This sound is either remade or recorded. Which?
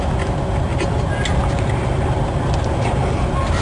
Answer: recorded